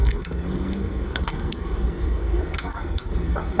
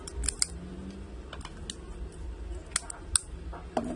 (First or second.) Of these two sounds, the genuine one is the second